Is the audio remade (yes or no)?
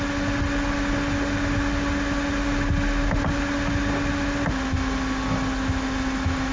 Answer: no